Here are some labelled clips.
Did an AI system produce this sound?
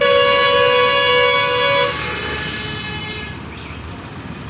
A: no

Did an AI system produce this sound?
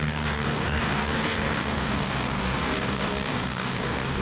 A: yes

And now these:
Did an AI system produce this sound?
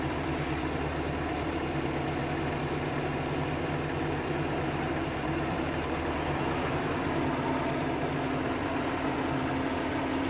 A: yes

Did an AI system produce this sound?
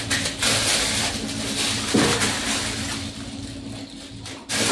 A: no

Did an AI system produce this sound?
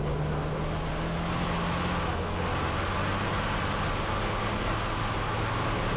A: no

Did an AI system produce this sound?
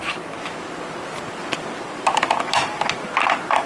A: no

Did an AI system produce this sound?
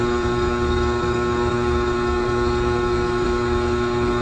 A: yes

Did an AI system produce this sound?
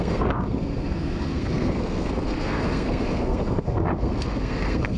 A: yes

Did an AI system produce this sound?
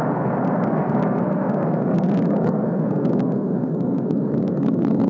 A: yes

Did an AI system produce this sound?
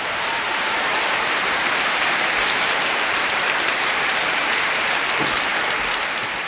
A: yes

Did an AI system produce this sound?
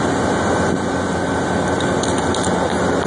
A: no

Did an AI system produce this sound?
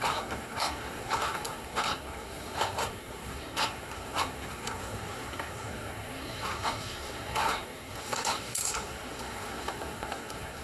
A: yes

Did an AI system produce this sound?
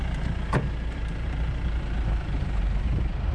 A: yes